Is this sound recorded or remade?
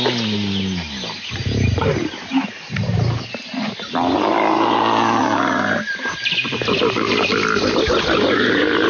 recorded